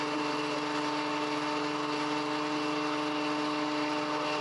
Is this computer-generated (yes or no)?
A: no